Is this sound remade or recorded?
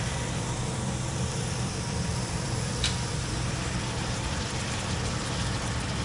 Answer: remade